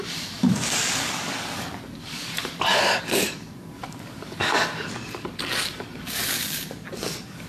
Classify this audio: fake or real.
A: fake